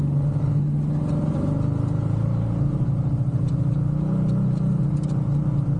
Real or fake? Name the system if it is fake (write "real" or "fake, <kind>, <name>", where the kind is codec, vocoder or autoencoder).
real